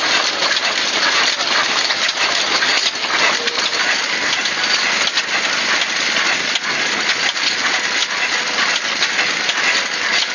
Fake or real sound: real